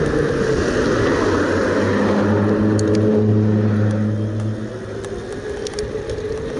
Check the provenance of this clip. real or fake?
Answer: real